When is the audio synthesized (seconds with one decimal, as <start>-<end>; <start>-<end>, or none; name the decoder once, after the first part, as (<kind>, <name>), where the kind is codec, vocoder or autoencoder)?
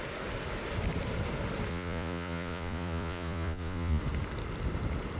1.7-4.0 (vocoder, Vocos)